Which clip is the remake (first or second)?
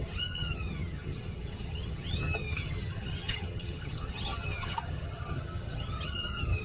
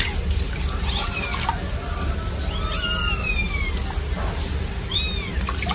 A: first